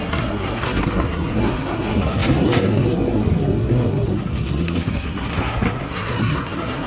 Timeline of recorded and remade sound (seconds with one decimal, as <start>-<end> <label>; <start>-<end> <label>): 0.0-6.9 remade

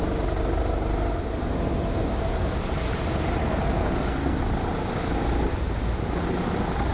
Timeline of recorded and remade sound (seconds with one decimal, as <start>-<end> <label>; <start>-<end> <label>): 0.0-3.4 recorded; 3.4-4.4 remade; 4.4-6.9 recorded

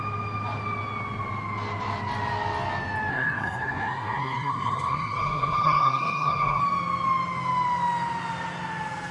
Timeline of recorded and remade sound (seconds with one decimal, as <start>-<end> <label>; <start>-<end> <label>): 0.0-3.1 recorded; 3.1-6.6 remade; 6.6-9.1 recorded

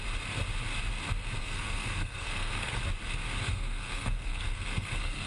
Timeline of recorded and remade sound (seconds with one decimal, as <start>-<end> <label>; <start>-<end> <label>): 0.0-1.4 recorded; 1.4-2.8 remade; 2.8-3.4 recorded; 3.4-5.3 remade

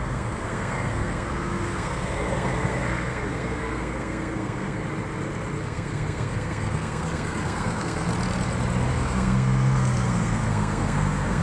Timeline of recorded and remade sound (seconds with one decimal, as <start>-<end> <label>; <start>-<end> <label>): 0.0-4.8 remade; 4.8-5.6 recorded; 5.6-8.1 remade; 8.1-8.9 recorded; 8.9-11.4 remade